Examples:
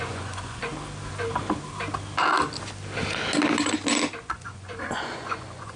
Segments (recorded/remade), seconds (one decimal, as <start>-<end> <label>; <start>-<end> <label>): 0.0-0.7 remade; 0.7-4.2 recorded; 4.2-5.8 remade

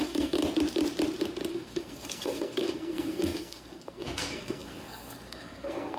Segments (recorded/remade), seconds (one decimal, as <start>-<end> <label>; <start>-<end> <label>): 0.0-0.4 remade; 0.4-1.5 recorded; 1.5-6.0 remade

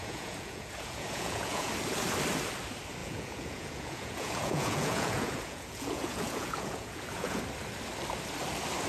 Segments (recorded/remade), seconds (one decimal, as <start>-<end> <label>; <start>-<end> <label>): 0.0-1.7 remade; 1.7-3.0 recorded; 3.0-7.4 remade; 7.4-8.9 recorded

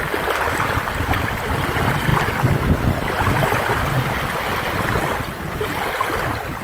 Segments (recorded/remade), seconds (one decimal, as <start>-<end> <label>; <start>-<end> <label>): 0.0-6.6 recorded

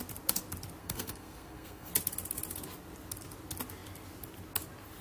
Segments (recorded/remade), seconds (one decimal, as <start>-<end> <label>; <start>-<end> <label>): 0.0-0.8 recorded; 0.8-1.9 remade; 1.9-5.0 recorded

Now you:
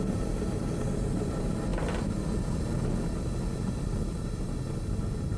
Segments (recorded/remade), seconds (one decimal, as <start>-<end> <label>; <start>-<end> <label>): 0.0-5.4 recorded